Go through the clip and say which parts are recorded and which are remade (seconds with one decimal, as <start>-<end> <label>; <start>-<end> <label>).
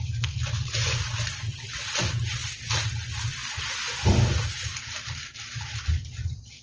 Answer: 0.0-6.6 recorded